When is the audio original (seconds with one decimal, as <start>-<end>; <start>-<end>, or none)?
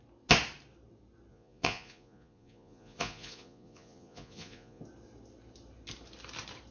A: 0.0-1.3; 4.8-6.7